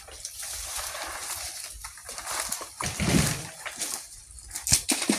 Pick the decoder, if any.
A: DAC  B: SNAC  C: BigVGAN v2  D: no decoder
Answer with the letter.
D